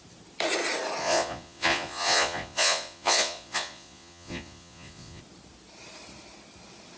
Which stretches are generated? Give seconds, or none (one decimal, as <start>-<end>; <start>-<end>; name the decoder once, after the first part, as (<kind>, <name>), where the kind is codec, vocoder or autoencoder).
1.0-5.2 (vocoder, Vocos)